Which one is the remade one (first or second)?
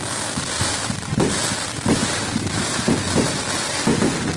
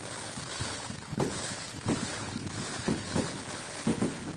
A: second